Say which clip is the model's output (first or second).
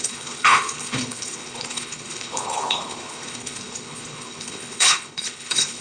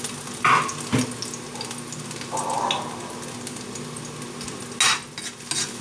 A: first